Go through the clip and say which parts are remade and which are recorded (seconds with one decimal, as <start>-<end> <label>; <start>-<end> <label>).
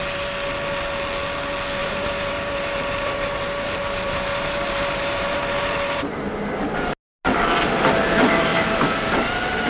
0.0-1.8 recorded; 1.8-6.3 remade; 6.3-8.5 recorded; 8.5-9.0 remade; 9.0-9.7 recorded